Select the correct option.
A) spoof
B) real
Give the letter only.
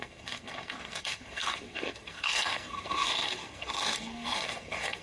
A